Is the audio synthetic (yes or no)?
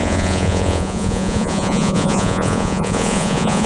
yes